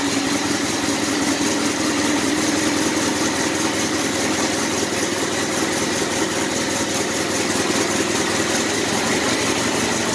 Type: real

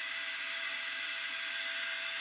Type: real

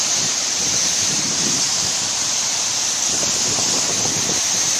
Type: fake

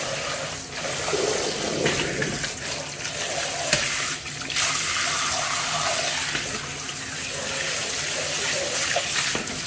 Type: real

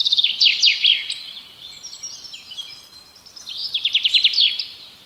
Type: fake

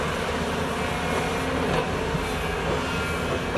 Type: real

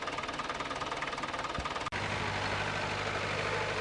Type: real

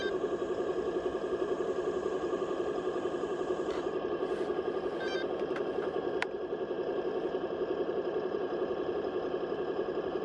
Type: fake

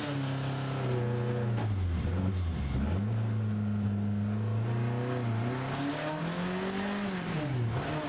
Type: real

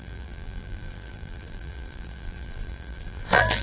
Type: fake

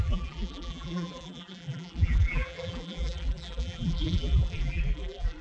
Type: fake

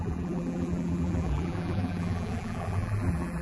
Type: fake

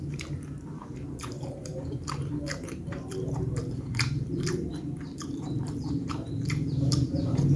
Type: fake